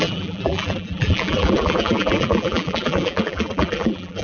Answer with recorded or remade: remade